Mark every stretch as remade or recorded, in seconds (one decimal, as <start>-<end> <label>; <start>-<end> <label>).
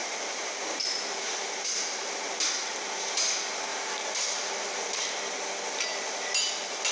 0.0-2.2 remade; 2.2-3.7 recorded; 3.7-5.1 remade; 5.1-6.9 recorded